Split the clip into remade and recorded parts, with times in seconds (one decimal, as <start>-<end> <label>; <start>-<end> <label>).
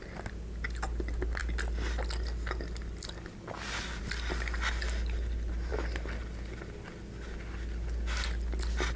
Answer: 0.0-9.0 recorded